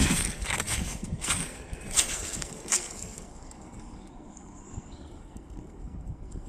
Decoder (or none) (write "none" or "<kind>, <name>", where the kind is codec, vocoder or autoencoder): codec, SNAC